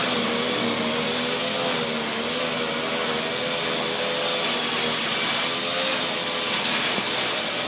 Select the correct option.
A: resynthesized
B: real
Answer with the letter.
B